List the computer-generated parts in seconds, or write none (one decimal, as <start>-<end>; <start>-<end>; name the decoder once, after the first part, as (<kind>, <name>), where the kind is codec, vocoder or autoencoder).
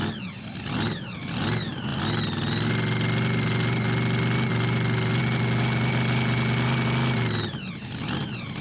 none